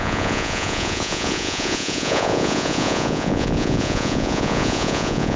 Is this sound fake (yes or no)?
yes